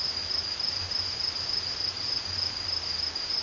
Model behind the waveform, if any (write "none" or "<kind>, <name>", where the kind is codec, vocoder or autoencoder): none